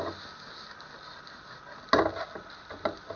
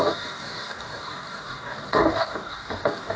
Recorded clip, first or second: first